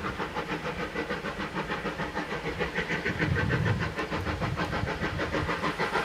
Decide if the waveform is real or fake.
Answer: real